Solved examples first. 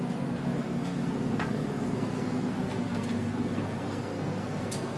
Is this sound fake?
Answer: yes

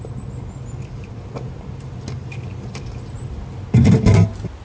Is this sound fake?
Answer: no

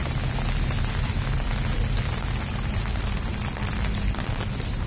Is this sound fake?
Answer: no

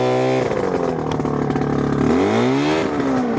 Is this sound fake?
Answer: no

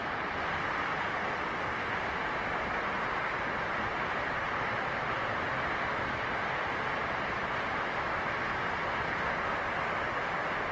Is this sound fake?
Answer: no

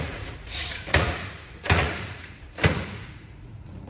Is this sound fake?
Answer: yes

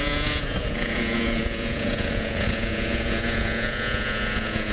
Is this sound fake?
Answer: yes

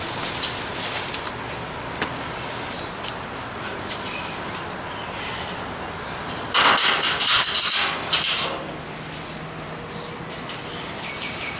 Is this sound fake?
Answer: no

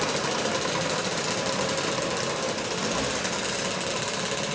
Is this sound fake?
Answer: no